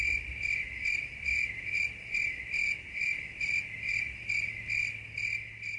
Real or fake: real